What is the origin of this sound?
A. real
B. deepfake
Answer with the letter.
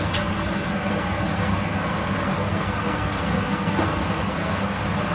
B